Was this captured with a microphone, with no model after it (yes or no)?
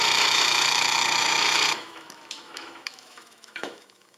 no